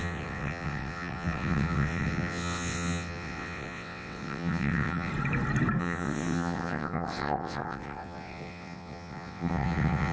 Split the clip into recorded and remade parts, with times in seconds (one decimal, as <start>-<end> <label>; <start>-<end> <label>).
0.0-5.1 remade; 5.1-5.8 recorded; 5.8-10.1 remade

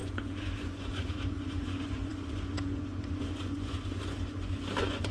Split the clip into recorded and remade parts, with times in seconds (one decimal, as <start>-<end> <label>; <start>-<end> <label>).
0.0-5.1 remade

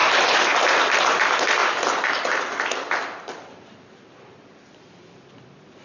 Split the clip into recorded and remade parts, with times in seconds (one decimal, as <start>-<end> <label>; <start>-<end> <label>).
0.0-0.8 recorded; 0.8-5.8 remade

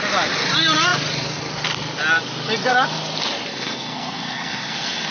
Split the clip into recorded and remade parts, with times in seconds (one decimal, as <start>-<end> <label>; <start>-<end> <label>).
0.0-3.5 recorded; 3.5-5.1 remade

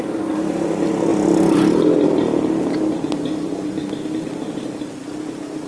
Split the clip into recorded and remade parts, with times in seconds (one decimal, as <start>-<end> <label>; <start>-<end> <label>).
0.0-5.7 recorded